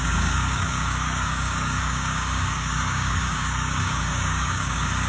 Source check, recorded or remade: remade